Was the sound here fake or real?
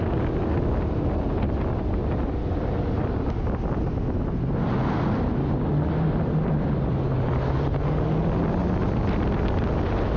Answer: real